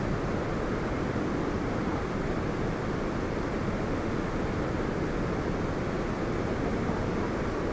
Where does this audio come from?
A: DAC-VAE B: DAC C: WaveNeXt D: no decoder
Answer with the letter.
D